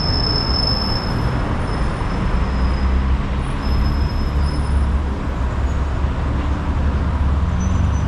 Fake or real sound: real